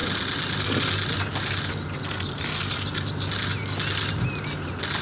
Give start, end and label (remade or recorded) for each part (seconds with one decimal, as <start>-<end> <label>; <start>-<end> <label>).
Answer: 0.0-5.0 recorded